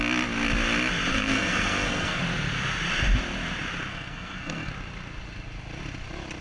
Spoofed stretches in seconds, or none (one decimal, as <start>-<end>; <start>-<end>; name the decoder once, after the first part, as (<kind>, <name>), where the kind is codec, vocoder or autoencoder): 1.1-2.2 (codec, SNAC); 3.9-4.7